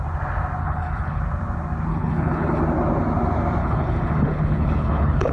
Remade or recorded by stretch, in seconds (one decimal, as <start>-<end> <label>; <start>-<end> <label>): 0.0-0.6 recorded; 0.6-1.2 remade; 1.2-1.9 recorded; 1.9-2.6 remade; 2.6-3.6 recorded; 3.6-5.3 remade